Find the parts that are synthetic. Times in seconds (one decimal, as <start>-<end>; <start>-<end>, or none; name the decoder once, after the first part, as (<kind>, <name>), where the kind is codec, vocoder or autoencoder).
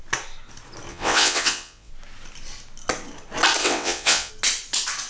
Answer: 0.9-1.9 (vocoder, WaveNeXt); 3.6-4.3